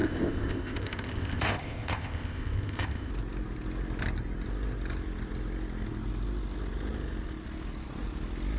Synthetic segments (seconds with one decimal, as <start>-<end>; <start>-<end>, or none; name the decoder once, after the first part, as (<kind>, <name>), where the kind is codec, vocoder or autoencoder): 0.0-3.1 (codec, ZipCodec)